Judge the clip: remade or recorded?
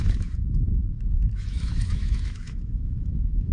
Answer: remade